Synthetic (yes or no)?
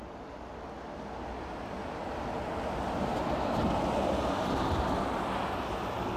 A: no